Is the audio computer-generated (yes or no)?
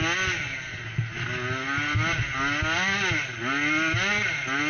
no